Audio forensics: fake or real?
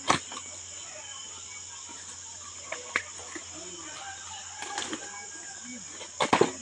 real